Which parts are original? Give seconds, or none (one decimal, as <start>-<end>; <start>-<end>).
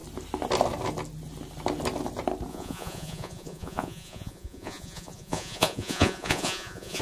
0.0-2.5